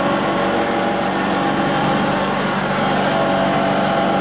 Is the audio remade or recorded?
recorded